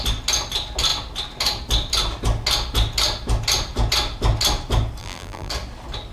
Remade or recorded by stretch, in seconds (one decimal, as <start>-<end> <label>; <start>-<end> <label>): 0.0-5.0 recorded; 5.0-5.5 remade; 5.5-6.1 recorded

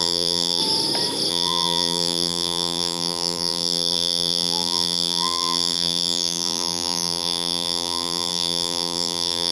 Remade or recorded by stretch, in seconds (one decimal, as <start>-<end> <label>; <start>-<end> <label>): 0.0-0.6 remade; 0.6-1.3 recorded; 1.3-9.5 remade

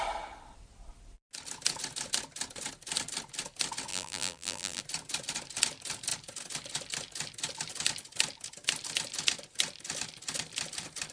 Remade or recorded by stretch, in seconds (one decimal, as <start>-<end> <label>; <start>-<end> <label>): 0.0-3.9 recorded; 3.9-4.8 remade; 4.8-11.1 recorded

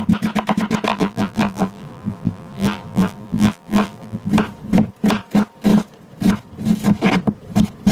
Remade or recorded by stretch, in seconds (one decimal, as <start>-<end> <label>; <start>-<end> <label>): 0.0-0.9 recorded; 0.9-4.3 remade; 4.3-7.9 recorded

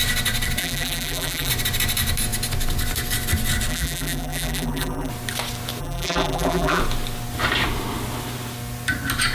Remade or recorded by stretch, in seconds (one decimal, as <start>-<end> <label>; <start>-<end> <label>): 0.0-0.6 recorded; 0.6-1.5 remade; 1.5-3.7 recorded; 3.7-5.1 remade; 5.1-5.8 recorded; 5.8-6.8 remade; 6.8-9.3 recorded

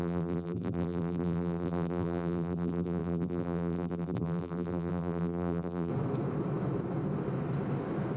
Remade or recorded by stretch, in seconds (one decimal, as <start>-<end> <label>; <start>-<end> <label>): 0.0-5.9 remade; 5.9-8.2 recorded